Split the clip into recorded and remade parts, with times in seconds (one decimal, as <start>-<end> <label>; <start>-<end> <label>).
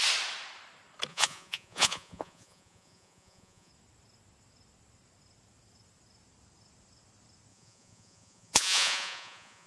0.0-1.1 recorded; 1.1-3.7 remade; 3.7-7.5 recorded; 7.5-9.7 remade